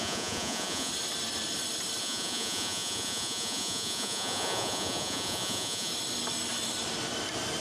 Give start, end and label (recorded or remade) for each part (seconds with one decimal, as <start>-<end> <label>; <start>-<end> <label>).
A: 0.0-0.9 remade; 0.9-2.0 recorded; 2.0-5.9 remade; 5.9-7.6 recorded